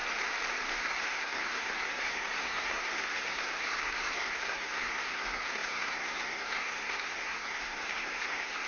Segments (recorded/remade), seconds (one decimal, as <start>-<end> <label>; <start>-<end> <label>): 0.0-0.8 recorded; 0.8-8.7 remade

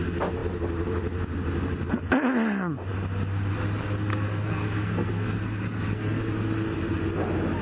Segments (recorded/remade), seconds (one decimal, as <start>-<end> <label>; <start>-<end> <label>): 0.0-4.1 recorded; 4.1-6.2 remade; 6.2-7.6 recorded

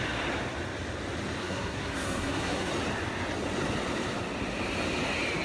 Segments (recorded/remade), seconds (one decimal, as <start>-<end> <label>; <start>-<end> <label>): 0.0-1.4 recorded; 1.4-2.7 remade; 2.7-5.4 recorded